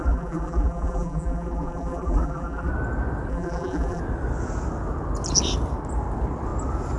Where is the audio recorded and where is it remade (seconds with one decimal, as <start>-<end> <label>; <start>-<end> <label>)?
0.0-2.7 remade; 2.7-3.3 recorded; 3.3-4.0 remade; 4.0-7.0 recorded